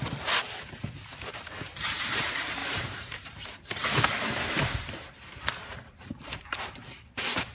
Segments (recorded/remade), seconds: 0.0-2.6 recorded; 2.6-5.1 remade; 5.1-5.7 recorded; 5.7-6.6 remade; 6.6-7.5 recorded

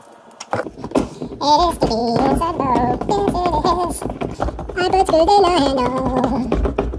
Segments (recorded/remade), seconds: 0.0-7.0 recorded

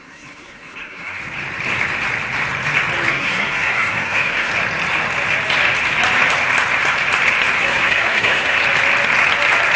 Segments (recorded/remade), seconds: 0.0-1.2 remade; 1.2-3.1 recorded; 3.1-4.5 remade; 4.5-7.6 recorded; 7.6-8.6 remade; 8.6-9.8 recorded

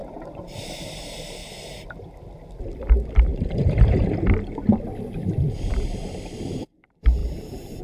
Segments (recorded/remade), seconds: 0.0-1.0 remade; 1.0-7.2 recorded; 7.2-7.8 remade

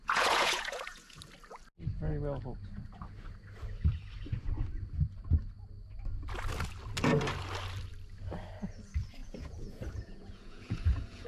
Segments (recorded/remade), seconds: 0.0-1.2 remade; 1.2-9.2 recorded; 9.2-11.3 remade

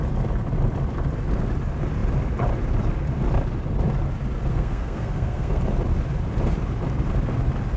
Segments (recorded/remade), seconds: 0.0-4.5 recorded; 4.5-5.6 remade; 5.6-7.8 recorded